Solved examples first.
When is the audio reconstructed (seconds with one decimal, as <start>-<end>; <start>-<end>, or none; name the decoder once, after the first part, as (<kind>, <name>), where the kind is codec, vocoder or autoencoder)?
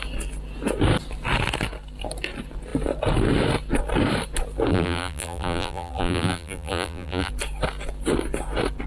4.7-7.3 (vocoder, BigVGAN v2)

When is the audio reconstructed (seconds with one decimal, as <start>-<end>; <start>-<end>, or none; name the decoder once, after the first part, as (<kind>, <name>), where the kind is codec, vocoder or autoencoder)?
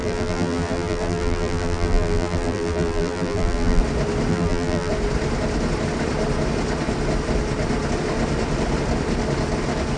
0.0-3.8 (vocoder, BigVGAN v2); 4.3-4.9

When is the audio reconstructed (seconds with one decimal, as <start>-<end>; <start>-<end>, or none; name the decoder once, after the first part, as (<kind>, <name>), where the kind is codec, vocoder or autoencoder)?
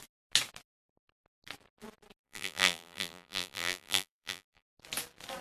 2.2-4.7 (vocoder, BigVGAN v2)